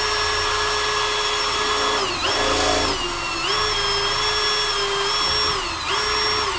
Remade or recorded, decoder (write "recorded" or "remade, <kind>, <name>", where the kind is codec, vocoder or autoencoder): recorded